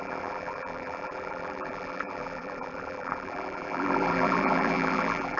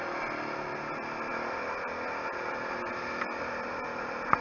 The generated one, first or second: first